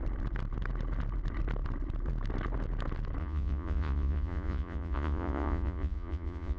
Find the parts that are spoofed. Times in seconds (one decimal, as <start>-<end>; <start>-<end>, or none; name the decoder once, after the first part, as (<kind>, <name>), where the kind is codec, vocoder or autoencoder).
3.2-6.6 (vocoder, Vocos)